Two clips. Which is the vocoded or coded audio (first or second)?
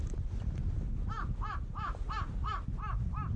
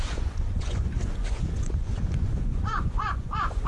second